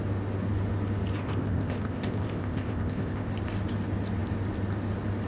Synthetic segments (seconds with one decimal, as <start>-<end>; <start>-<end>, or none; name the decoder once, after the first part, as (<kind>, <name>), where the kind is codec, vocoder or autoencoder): 1.2-3.3 (codec, ZipCodec)